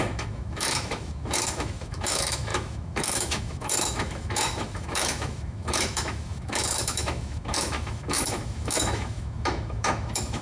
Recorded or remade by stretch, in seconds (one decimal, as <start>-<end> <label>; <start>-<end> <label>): 0.0-10.4 remade